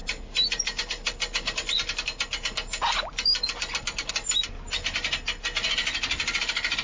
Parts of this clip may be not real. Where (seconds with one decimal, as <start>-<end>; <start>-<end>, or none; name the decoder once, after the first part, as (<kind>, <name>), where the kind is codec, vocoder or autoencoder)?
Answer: none

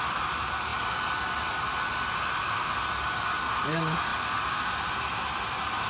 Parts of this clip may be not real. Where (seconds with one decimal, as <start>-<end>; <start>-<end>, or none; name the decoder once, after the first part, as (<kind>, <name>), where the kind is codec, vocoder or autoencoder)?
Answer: none

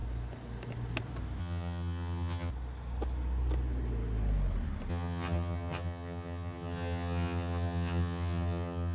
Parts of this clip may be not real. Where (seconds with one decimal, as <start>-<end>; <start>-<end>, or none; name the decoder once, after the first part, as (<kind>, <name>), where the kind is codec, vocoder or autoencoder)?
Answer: 1.4-2.5 (vocoder, HiFi-GAN); 4.9-8.9

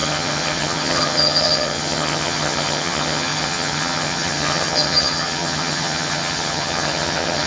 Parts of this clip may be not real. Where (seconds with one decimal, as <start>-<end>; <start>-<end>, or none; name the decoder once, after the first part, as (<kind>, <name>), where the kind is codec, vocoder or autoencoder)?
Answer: 0.0-7.5 (vocoder, HiFi-GAN)

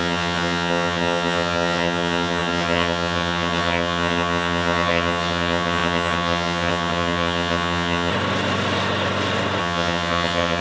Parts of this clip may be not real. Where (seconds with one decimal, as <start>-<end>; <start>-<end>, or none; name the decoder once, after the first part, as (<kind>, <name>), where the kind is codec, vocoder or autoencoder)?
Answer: 0.0-8.1 (vocoder, HiFi-GAN); 9.6-10.6